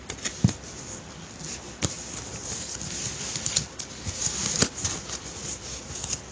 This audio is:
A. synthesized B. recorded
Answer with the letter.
B